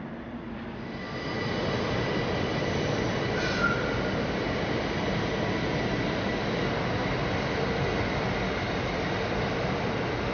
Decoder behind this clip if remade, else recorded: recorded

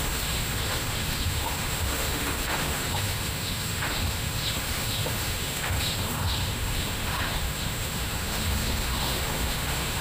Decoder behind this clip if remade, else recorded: remade, autoencoder, DAC-VAE